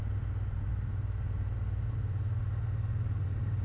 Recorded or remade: recorded